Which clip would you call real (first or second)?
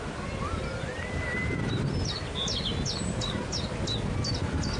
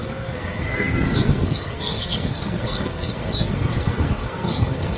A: first